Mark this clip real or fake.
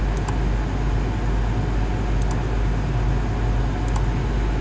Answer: real